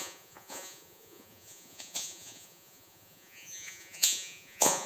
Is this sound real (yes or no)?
no